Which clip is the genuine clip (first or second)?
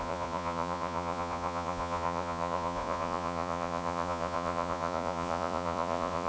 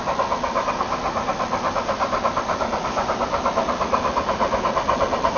second